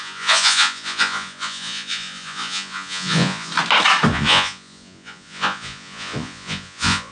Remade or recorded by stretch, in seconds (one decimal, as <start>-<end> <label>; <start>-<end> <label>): 0.0-3.5 remade; 3.5-4.1 recorded; 4.1-7.1 remade